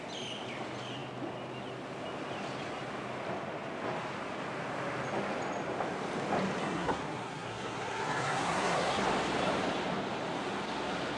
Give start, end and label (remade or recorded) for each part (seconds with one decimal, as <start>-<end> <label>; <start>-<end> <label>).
0.0-6.6 recorded; 6.6-9.0 remade; 9.0-11.2 recorded

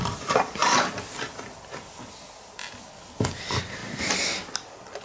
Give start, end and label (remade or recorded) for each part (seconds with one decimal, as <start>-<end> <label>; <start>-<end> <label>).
0.0-5.0 recorded

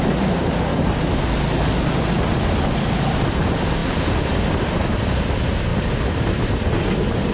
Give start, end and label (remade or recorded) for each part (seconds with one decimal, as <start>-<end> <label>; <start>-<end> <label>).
0.0-7.3 recorded

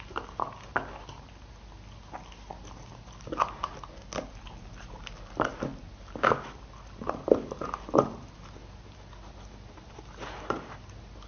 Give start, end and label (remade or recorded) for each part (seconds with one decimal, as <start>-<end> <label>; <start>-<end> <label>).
0.0-11.3 recorded

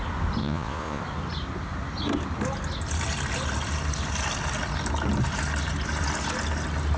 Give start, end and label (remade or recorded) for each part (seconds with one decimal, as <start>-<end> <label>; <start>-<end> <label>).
0.0-0.4 recorded; 0.4-1.0 remade; 1.0-7.0 recorded

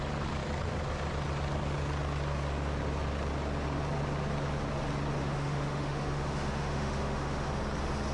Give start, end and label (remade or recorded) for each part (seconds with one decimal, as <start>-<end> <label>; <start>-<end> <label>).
0.0-5.2 recorded; 5.2-7.5 remade; 7.5-8.1 recorded

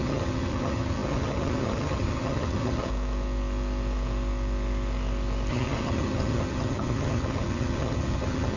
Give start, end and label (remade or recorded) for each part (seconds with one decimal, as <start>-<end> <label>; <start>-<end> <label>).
0.0-2.9 remade; 2.9-5.5 recorded; 5.5-8.6 remade

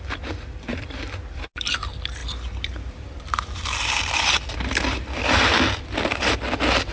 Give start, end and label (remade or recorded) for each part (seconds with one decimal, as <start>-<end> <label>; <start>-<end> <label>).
0.0-0.7 recorded; 0.7-1.4 remade; 1.4-2.2 recorded; 2.2-6.3 remade; 6.3-6.9 recorded